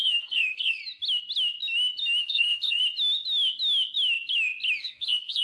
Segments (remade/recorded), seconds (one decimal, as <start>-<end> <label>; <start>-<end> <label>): 0.0-0.8 remade; 0.8-2.2 recorded; 2.2-2.8 remade; 2.8-4.8 recorded; 4.8-5.4 remade